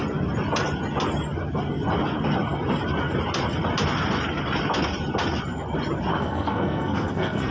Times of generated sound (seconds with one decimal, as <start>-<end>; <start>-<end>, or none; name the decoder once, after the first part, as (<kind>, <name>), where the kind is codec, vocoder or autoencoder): 6.1-7.5 (codec, SNAC)